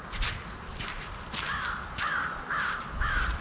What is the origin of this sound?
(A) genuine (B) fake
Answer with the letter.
A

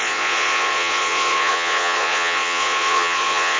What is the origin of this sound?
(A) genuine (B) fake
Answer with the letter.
B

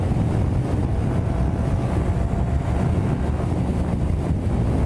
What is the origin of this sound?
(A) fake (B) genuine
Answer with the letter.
B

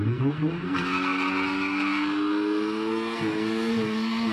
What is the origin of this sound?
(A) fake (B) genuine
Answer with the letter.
A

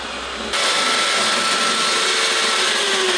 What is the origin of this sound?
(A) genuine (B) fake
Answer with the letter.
A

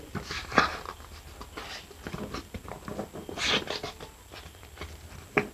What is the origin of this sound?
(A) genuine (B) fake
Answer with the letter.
A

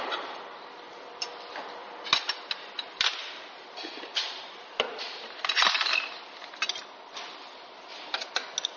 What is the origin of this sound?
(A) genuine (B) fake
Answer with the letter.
A